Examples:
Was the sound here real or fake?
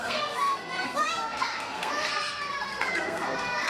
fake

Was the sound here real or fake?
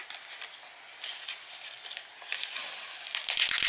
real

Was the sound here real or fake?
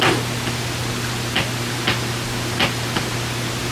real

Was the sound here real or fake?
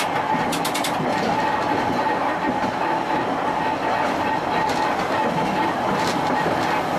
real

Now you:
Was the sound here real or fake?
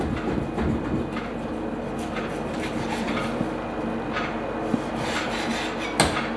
real